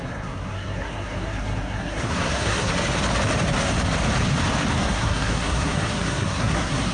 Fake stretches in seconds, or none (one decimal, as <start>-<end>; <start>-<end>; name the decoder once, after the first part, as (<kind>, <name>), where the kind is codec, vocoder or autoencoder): 0.0-2.7 (codec, SNAC); 4.8-6.9